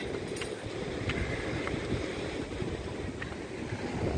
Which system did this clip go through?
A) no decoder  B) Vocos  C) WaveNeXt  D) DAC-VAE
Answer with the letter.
A